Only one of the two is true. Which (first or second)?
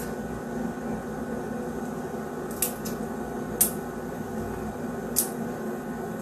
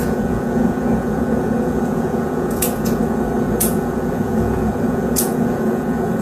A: first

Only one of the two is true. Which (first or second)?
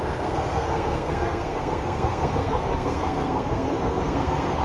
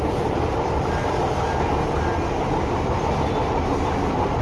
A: second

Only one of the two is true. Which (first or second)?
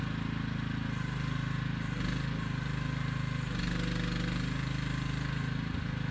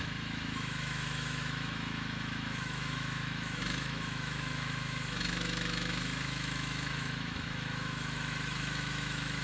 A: first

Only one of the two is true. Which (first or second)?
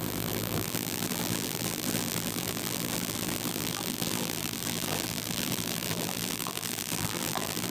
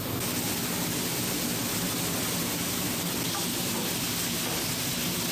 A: second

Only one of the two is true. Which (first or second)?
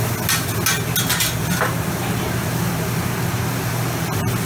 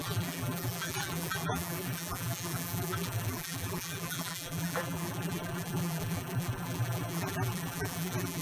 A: first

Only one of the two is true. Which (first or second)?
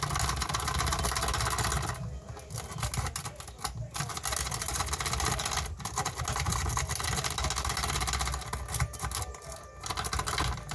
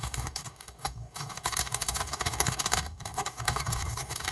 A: first